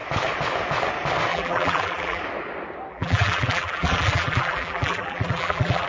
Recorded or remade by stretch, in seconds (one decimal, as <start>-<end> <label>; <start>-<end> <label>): 0.0-1.3 recorded; 1.3-2.2 remade; 2.2-2.9 recorded; 2.9-5.9 remade